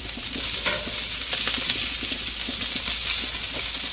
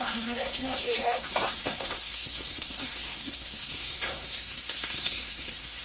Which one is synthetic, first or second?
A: second